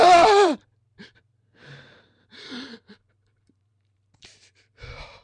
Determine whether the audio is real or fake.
fake